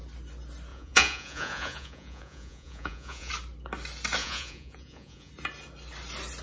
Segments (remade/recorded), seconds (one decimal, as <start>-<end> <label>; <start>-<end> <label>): 0.0-0.7 recorded; 0.7-3.3 remade; 3.3-4.2 recorded; 4.2-5.3 remade; 5.3-6.4 recorded